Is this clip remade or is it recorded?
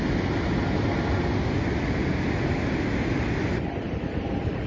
recorded